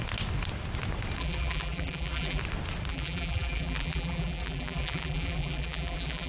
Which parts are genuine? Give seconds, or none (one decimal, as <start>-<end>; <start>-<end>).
0.0-1.2; 2.4-2.9